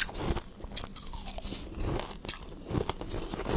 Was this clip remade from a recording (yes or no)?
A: no